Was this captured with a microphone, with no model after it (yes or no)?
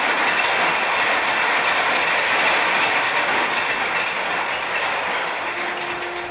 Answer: yes